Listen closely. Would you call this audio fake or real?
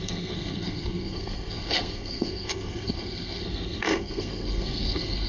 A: fake